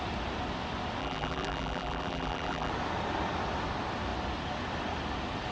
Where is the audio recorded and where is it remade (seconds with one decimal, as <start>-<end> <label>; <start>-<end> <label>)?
0.0-1.0 recorded; 1.0-2.7 remade; 2.7-5.5 recorded